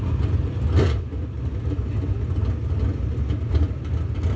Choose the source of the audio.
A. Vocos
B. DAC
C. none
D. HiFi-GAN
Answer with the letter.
C